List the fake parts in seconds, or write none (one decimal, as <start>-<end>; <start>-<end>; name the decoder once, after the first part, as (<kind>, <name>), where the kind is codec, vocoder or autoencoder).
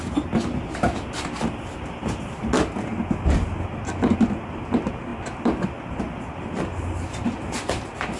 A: none